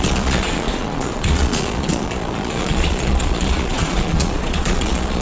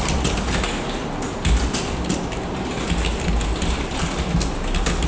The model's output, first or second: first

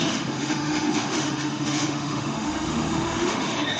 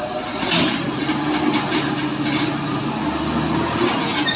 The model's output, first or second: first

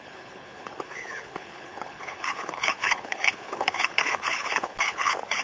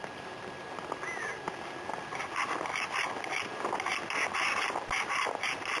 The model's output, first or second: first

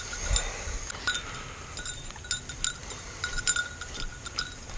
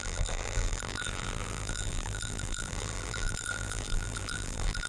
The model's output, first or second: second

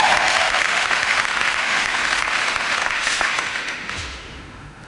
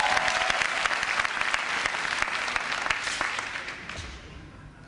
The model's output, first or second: first